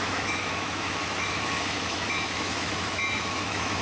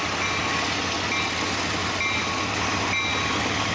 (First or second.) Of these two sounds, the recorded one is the second